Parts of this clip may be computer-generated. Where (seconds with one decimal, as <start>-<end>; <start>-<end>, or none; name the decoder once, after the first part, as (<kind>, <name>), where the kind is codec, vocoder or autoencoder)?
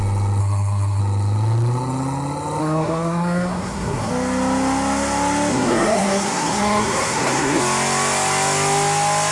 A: 0.4-1.0 (codec, SNAC); 2.6-4.1; 5.5-7.6